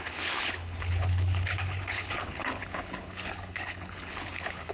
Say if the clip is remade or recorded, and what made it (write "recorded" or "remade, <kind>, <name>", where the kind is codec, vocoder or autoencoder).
remade, codec, HILCodec